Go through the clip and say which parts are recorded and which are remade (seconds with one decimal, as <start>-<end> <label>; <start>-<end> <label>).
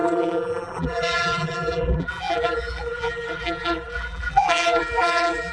0.0-5.5 remade